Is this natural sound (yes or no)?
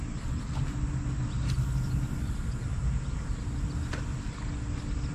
yes